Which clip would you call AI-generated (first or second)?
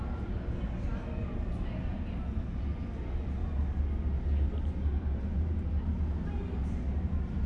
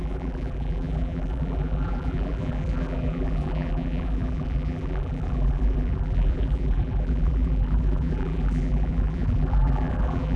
second